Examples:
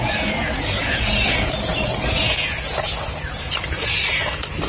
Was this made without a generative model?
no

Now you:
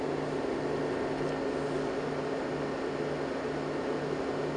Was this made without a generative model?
yes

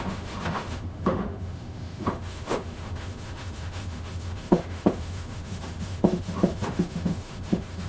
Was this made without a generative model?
no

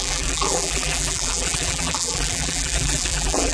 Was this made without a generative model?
no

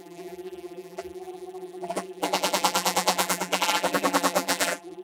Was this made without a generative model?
no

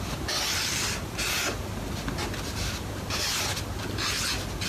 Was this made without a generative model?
yes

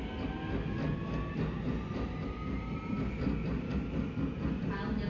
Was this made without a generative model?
yes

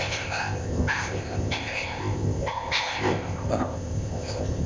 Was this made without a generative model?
no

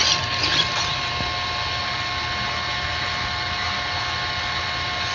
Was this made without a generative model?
yes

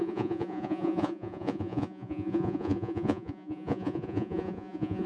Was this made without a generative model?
no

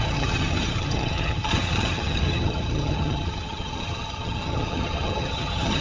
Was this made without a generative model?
no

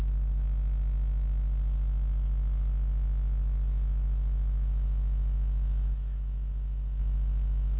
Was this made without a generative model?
no